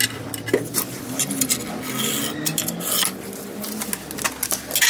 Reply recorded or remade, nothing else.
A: recorded